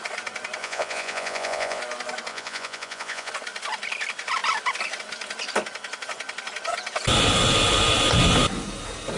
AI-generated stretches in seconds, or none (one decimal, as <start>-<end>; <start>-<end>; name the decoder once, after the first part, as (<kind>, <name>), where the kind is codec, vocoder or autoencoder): 0.6-1.8 (vocoder, Vocos); 2.3-3.3